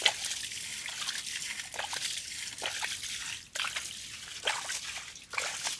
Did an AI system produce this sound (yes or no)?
no